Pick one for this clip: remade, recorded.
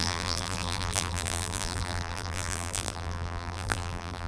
remade